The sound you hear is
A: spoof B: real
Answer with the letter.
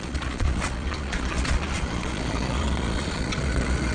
A